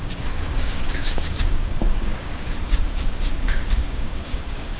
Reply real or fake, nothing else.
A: fake